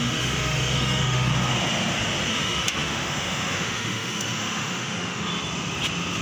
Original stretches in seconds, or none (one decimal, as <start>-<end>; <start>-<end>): 1.3-2.3; 5.3-6.2